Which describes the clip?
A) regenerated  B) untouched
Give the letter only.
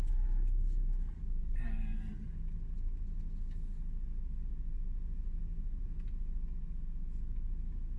B